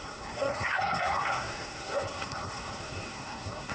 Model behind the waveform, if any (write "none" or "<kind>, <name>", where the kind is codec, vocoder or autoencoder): codec, SNAC